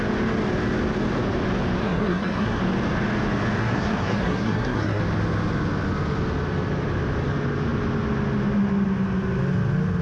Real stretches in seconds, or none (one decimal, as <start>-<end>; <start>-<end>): 0.0-1.8; 2.6-3.6; 5.0-10.0